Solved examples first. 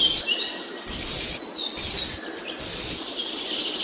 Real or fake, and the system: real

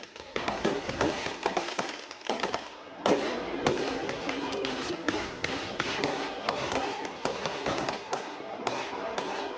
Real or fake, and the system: fake, codec, SNAC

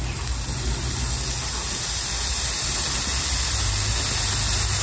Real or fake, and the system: real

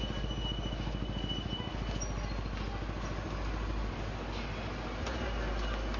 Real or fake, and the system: real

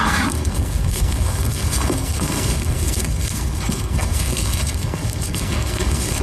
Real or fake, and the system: fake, codec, SNAC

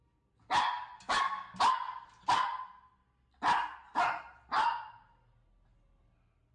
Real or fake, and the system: real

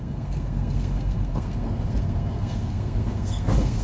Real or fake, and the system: fake, codec, SNAC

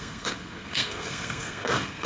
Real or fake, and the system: fake, codec, SNAC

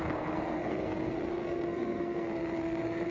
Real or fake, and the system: fake, codec, SNAC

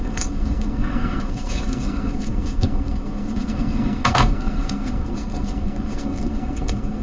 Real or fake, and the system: fake, codec, SNAC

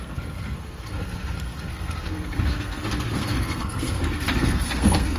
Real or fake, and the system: fake, codec, SNAC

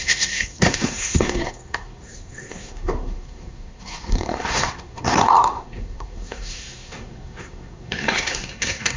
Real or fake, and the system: fake, codec, SNAC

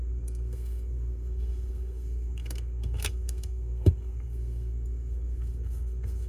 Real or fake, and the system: fake, codec, SNAC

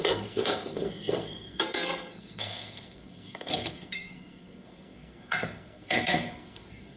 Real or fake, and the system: fake, codec, SNAC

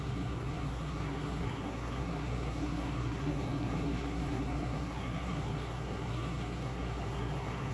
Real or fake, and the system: fake, codec, SNAC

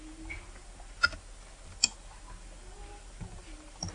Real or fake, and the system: real